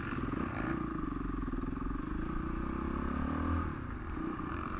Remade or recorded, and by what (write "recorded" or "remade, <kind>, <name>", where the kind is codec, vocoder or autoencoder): recorded